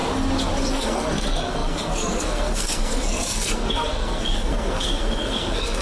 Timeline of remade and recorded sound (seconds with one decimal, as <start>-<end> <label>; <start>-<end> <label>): 0.0-0.7 recorded; 0.7-5.8 remade